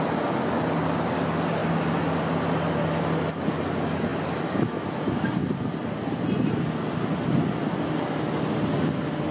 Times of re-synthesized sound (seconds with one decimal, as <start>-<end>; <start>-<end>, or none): none